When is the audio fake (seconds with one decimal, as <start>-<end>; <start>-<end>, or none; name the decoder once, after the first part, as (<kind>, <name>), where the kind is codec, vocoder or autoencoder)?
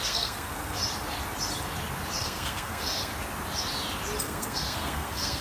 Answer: 0.0-0.8 (codec, SNAC); 2.2-3.1; 4.2-5.4